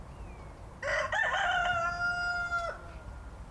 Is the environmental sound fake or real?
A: real